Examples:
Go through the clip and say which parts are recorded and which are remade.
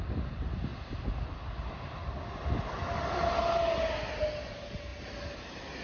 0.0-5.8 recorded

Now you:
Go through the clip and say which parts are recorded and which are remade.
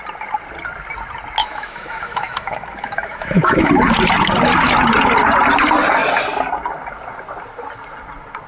0.0-1.4 recorded; 1.4-3.7 remade; 3.7-8.5 recorded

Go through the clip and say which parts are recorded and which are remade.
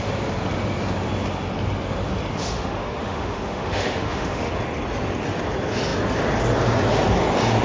0.0-2.4 recorded; 2.4-4.5 remade; 4.5-7.6 recorded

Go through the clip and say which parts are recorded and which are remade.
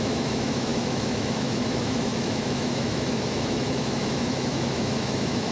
0.0-5.5 remade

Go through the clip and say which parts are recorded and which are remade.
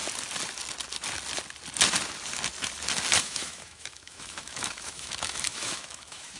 0.0-3.2 recorded; 3.2-6.4 remade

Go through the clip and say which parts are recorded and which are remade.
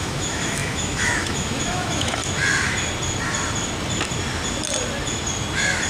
0.0-2.2 remade; 2.2-5.9 recorded